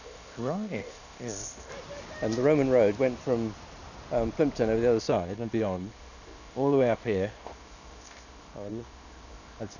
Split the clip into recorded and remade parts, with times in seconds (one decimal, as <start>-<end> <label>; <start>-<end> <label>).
0.0-1.7 remade; 1.7-5.0 recorded; 5.0-9.8 remade

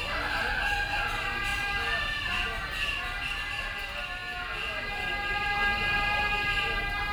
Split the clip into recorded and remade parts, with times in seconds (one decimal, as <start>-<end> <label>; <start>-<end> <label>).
0.0-7.1 recorded

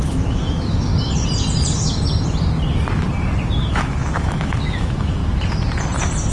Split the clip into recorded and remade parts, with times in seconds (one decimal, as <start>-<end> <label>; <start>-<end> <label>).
0.0-0.9 remade; 0.9-3.6 recorded; 3.6-5.2 remade; 5.2-6.3 recorded

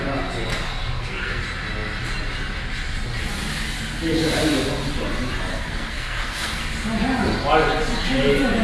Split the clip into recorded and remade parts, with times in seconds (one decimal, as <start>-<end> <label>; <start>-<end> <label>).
0.0-0.5 recorded; 0.5-1.4 remade; 1.4-5.5 recorded; 5.5-6.6 remade; 6.6-8.6 recorded

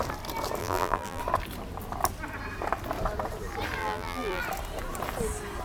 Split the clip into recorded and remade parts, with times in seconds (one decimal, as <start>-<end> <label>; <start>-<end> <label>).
0.0-0.6 recorded; 0.6-1.2 remade; 1.2-3.8 recorded; 3.8-4.4 remade; 4.4-5.6 recorded